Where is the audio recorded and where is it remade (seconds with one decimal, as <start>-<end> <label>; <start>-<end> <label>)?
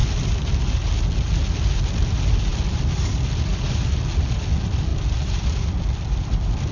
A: 0.0-2.5 recorded; 2.5-4.4 remade; 4.4-4.9 recorded; 4.9-6.7 remade